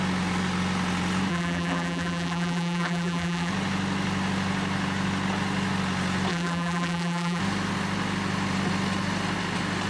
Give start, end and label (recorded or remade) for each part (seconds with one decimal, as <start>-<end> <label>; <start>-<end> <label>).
0.0-1.3 recorded; 1.3-3.5 remade; 3.5-6.3 recorded; 6.3-7.4 remade; 7.4-9.9 recorded